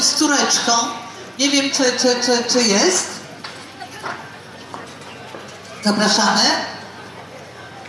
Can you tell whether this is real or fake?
fake